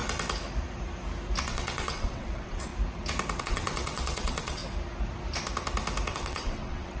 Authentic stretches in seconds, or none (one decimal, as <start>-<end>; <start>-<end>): 0.0-1.4; 2.7-3.4; 4.6-6.1